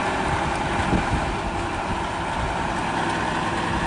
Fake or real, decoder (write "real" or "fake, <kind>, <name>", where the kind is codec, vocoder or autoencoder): real